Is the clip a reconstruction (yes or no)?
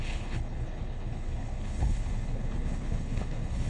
yes